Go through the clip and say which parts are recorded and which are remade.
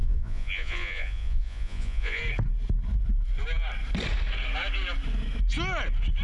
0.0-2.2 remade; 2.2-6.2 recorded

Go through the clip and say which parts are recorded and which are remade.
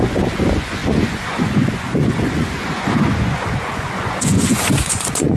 0.0-5.4 remade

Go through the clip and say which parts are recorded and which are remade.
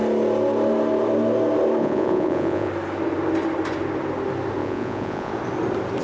0.0-1.8 recorded; 1.8-2.7 remade; 2.7-4.6 recorded; 4.6-5.3 remade; 5.3-6.0 recorded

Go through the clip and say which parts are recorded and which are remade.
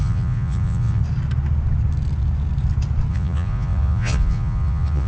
0.0-1.0 remade; 1.0-3.1 recorded; 3.1-5.1 remade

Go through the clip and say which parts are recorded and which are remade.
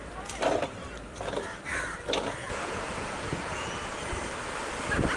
0.0-2.4 recorded; 2.4-4.0 remade; 4.0-5.2 recorded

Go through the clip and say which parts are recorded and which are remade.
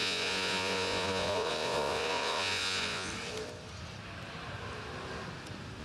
0.0-3.1 remade; 3.1-5.8 recorded